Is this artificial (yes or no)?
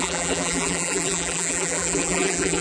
yes